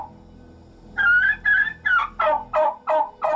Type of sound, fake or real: real